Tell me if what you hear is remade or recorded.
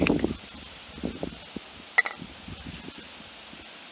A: recorded